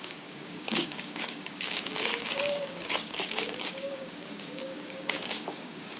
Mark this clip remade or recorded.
remade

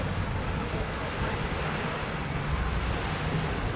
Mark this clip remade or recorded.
recorded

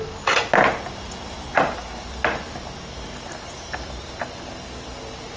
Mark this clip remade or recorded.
recorded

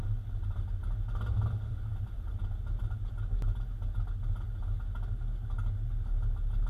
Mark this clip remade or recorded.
recorded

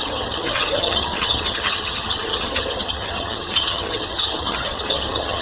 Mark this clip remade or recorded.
remade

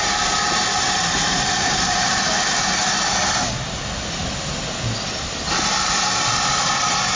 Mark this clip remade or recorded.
recorded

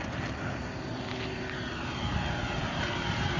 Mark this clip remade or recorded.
recorded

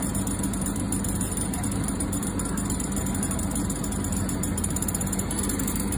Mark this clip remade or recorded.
remade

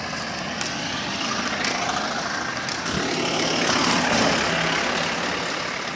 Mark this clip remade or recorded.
recorded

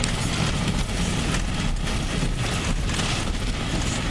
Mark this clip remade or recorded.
recorded